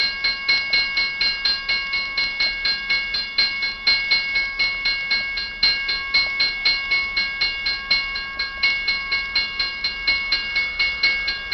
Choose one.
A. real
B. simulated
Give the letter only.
A